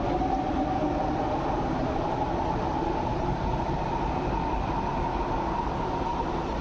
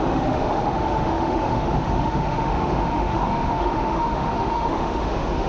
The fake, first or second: second